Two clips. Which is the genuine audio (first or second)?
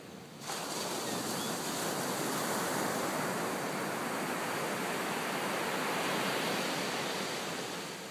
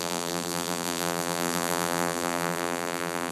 first